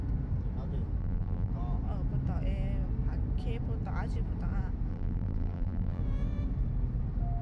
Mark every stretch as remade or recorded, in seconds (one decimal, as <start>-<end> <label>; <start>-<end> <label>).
0.0-1.0 recorded; 1.0-1.5 remade; 1.5-4.9 recorded; 4.9-6.0 remade; 6.0-7.4 recorded